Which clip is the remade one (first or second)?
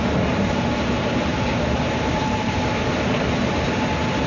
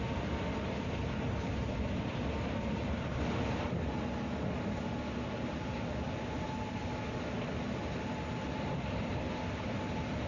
first